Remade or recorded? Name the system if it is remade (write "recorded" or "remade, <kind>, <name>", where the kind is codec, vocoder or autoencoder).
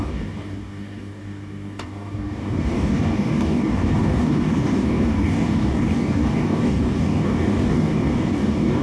remade, codec, DAC